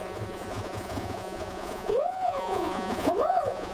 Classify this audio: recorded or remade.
remade